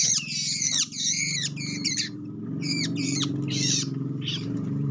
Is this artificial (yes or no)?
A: yes